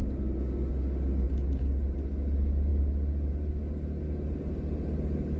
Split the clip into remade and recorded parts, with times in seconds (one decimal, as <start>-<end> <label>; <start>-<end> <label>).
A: 0.0-5.4 recorded